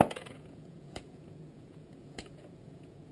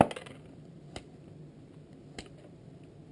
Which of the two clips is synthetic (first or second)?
first